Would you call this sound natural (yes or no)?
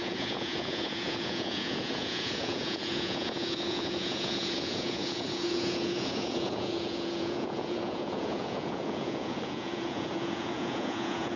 no